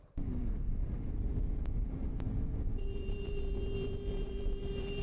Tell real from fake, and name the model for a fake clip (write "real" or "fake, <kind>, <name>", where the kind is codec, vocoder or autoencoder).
fake, vocoder, BigVGAN v2